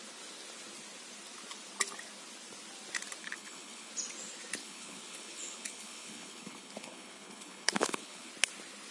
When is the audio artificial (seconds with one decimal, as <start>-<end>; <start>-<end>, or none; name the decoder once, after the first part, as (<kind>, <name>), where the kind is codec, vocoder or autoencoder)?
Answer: 3.2-3.9 (codec, HILCodec); 4.6-8.3